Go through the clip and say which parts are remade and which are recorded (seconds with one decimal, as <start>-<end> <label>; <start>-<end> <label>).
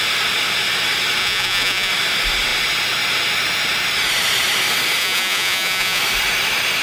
0.0-1.2 recorded; 1.2-1.9 remade; 1.9-5.0 recorded; 5.0-6.0 remade; 6.0-6.8 recorded